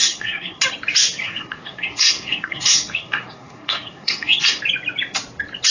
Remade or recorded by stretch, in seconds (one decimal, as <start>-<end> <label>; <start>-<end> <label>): 0.0-0.6 remade; 0.6-1.2 recorded; 1.2-4.6 remade; 4.6-5.7 recorded